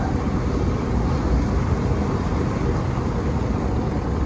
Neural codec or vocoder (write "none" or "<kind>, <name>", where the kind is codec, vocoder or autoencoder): none